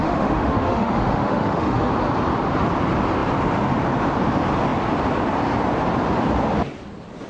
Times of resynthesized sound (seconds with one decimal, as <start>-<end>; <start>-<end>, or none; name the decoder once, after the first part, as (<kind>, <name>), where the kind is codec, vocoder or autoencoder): 0.0-1.9 (autoencoder, DAC-VAE)